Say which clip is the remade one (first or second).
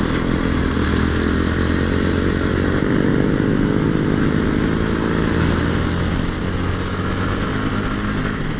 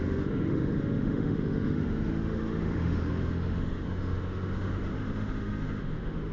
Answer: second